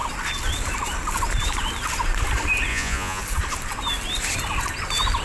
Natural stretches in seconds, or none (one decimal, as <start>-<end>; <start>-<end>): 0.0-2.7; 3.2-5.2